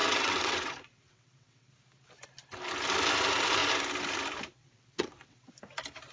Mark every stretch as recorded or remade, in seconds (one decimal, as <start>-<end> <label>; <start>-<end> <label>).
0.0-1.7 remade; 1.7-4.6 recorded; 4.6-5.5 remade; 5.5-6.1 recorded